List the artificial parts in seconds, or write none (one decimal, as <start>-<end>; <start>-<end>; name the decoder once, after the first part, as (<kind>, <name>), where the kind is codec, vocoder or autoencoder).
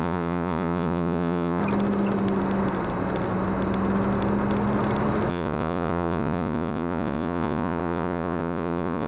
0.0-1.6 (vocoder, Vocos); 5.3-9.1